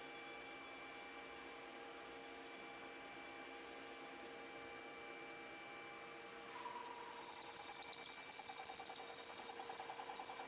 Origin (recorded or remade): recorded